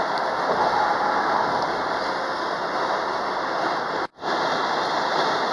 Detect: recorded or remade recorded